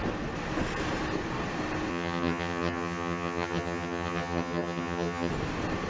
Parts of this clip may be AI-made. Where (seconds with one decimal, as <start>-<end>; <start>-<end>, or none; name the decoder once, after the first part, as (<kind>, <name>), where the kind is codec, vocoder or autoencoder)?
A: 1.9-5.3 (vocoder, HiFi-GAN)